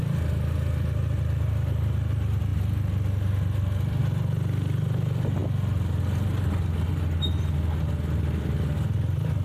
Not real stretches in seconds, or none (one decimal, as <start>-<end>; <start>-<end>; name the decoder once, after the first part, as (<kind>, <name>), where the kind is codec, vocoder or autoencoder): none